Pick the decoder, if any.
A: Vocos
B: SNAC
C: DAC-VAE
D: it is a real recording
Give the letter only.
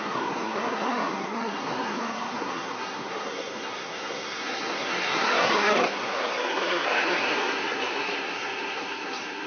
B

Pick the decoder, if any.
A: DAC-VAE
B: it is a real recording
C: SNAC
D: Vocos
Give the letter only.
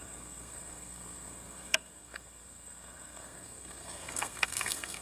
C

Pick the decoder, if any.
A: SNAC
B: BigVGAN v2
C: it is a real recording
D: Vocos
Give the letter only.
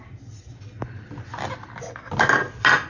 C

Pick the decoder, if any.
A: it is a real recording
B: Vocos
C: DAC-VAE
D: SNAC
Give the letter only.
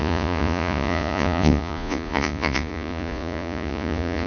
B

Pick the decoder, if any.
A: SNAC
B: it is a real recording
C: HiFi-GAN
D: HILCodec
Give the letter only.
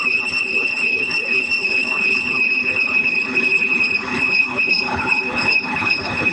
D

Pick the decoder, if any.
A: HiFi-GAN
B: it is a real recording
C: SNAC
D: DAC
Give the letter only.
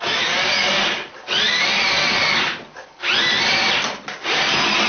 B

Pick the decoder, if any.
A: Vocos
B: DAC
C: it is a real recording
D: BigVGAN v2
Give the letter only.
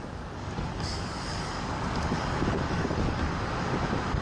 B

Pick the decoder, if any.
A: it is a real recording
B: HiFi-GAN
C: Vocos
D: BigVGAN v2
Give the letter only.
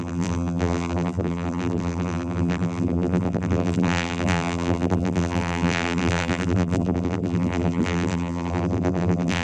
D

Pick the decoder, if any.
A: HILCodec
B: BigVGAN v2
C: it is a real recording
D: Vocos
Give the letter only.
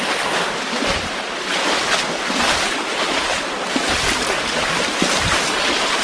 C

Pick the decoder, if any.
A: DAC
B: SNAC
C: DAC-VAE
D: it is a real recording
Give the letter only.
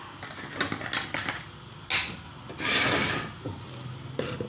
D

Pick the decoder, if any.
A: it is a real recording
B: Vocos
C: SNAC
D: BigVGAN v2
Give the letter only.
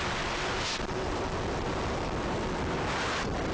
A